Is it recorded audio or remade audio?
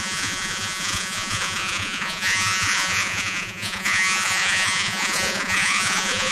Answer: remade